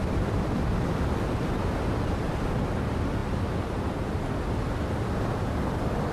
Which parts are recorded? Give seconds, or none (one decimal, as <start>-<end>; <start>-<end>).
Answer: 0.7-6.1